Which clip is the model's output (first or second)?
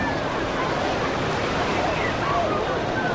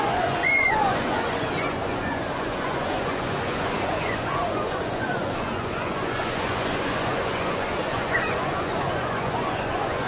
second